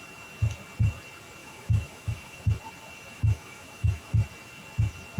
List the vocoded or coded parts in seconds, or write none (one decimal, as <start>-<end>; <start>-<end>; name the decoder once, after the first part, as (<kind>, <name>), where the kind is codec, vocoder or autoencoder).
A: 1.4-2.5 (autoencoder, DAC-VAE); 3.1-4.2